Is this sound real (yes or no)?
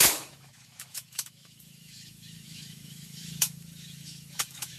no